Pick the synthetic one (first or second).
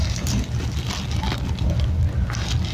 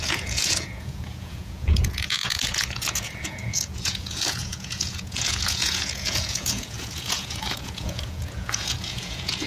second